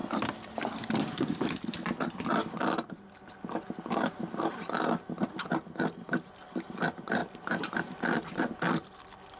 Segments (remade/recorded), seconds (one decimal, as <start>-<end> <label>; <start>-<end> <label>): 0.0-9.4 recorded